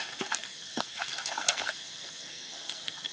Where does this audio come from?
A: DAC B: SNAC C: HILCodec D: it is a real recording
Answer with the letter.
B